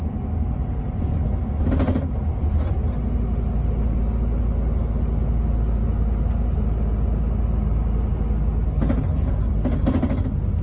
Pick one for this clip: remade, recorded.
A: recorded